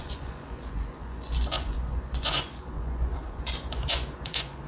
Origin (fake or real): fake